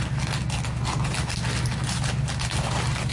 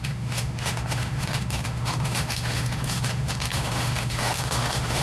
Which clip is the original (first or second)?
first